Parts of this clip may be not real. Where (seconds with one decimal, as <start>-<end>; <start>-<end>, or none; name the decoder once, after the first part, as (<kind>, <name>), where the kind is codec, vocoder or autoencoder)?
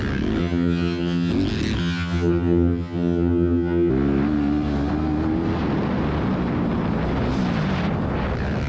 0.4-1.3 (vocoder, HiFi-GAN); 1.8-3.9